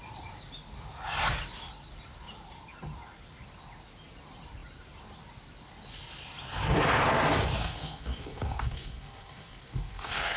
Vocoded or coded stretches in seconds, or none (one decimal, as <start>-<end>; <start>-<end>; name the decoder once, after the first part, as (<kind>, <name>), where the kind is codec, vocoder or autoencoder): 7.6-10.4 (codec, SNAC)